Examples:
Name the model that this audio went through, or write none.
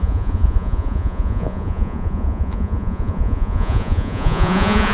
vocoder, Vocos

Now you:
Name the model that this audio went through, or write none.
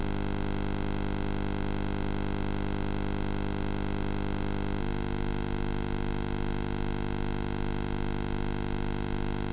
vocoder, Vocos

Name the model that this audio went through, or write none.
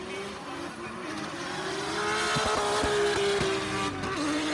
none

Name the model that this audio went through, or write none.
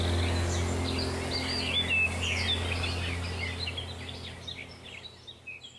none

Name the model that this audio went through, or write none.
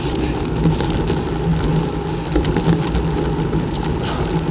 none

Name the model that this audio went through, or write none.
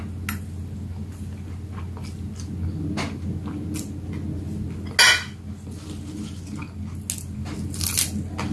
none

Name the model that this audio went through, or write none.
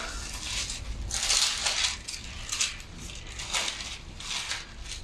none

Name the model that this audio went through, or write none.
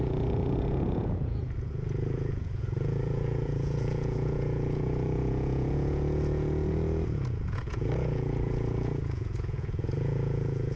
vocoder, Vocos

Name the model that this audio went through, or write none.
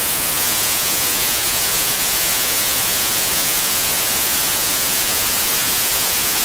vocoder, Vocos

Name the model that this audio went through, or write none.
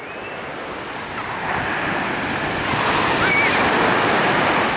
none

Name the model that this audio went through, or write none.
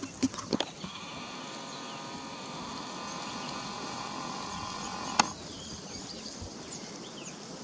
none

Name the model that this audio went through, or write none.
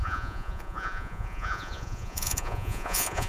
vocoder, Vocos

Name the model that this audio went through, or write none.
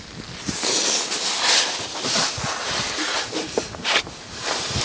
none